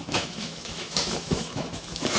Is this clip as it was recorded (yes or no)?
no